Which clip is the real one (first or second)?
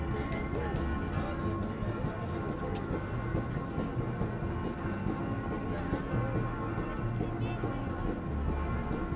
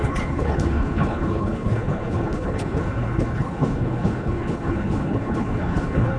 first